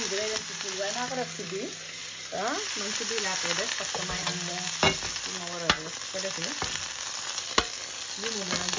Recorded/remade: recorded